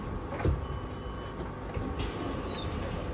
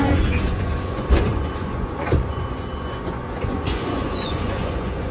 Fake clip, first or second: second